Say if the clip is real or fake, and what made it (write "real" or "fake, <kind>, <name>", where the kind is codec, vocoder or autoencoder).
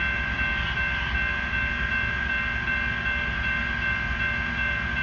real